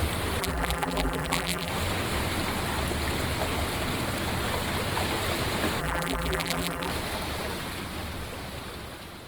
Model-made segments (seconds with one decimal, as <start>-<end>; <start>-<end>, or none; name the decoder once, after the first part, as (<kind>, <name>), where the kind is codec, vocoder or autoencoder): 0.4-1.7 (vocoder, BigVGAN v2); 5.8-6.9